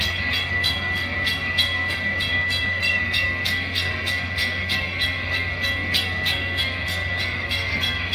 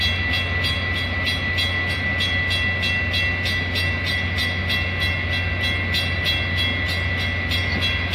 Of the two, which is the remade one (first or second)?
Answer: first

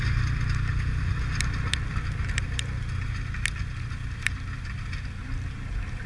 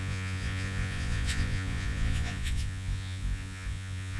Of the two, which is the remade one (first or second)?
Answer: second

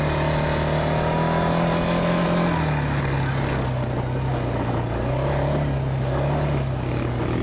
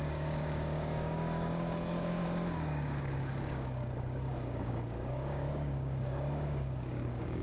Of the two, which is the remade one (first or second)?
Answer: second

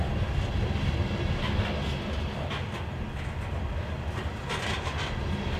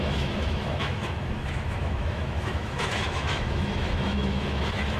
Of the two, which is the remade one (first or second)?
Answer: second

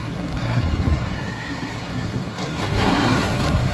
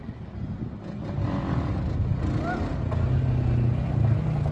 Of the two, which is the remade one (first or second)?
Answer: first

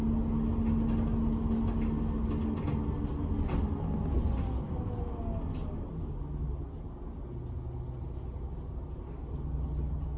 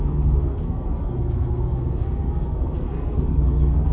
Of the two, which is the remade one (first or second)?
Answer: second